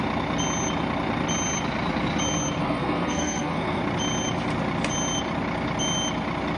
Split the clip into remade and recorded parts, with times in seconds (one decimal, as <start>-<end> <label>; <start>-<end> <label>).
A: 0.0-2.6 recorded; 2.6-3.8 remade; 3.8-6.6 recorded